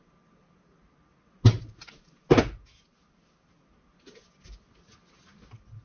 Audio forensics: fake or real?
real